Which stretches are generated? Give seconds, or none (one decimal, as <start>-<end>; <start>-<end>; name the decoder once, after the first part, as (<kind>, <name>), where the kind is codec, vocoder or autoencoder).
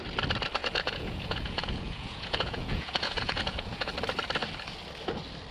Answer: 0.6-3.9 (vocoder, Vocos)